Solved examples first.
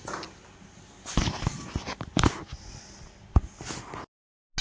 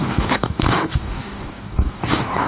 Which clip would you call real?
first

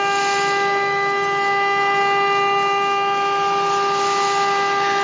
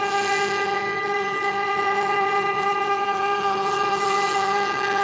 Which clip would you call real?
first